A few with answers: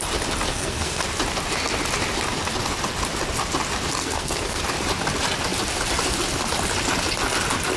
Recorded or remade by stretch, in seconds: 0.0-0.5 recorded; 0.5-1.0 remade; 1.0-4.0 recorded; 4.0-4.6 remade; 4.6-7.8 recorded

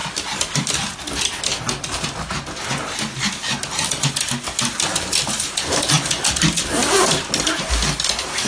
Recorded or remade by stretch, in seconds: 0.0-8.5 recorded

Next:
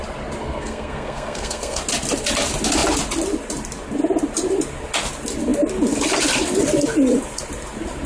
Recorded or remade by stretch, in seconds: 0.0-0.4 recorded; 0.4-1.8 remade; 1.8-8.1 recorded

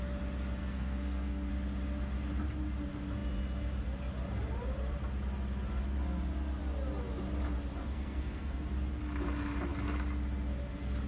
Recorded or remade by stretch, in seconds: 0.0-0.6 recorded; 0.6-1.5 remade; 1.5-7.8 recorded; 7.8-8.7 remade; 8.7-11.1 recorded

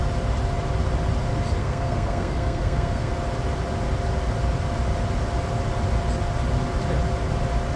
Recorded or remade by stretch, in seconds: 0.0-1.6 recorded; 1.6-3.1 remade; 3.1-7.8 recorded

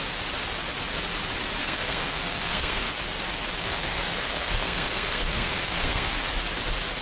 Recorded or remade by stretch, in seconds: 0.0-1.6 recorded; 1.6-2.9 remade; 2.9-3.6 recorded; 3.6-6.3 remade; 6.3-7.0 recorded